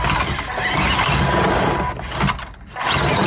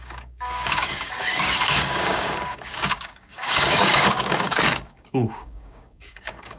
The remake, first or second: second